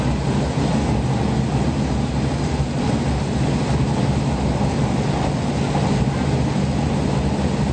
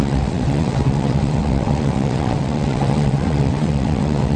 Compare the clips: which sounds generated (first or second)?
second